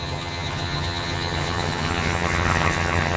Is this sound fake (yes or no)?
yes